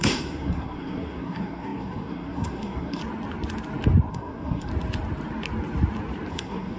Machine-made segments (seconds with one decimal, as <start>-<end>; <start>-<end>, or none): 0.0-3.0; 4.1-4.7; 6.3-6.8